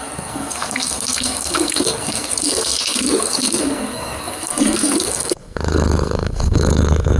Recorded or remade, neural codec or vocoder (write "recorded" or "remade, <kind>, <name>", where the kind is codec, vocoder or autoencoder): remade, codec, SNAC